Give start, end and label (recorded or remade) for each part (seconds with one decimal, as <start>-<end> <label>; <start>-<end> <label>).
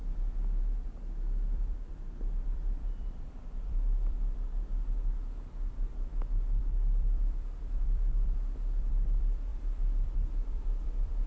0.0-0.6 recorded; 0.6-4.7 remade; 4.7-6.6 recorded; 6.6-11.3 remade